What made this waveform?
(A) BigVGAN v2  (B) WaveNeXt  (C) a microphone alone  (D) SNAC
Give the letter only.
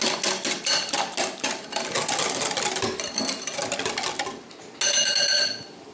C